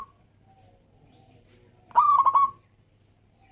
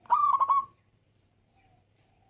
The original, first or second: first